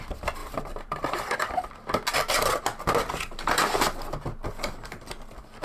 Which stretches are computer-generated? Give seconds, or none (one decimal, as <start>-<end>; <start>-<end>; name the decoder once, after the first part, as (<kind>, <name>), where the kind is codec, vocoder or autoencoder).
0.4-1.5 (vocoder, BigVGAN v2)